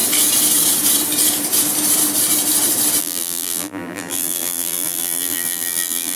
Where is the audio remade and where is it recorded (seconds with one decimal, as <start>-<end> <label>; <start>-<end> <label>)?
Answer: 0.0-3.0 recorded; 3.0-6.2 remade